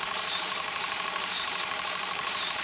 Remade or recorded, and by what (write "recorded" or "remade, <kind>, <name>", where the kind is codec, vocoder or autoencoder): remade, vocoder, BigVGAN v2